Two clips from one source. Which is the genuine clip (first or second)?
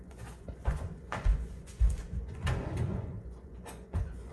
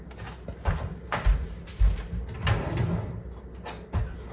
second